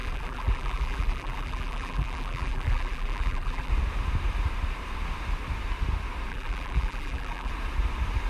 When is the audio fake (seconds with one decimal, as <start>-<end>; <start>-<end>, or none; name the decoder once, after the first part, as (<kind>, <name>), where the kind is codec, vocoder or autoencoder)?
0.0-3.7 (vocoder, BigVGAN v2); 6.3-7.5